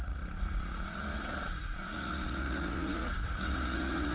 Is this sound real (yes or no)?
no